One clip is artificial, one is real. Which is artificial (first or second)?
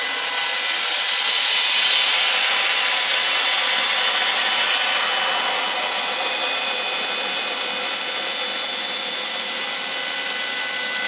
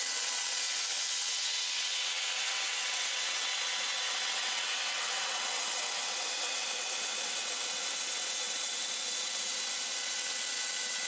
second